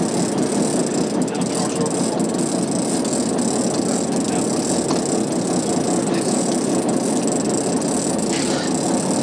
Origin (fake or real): real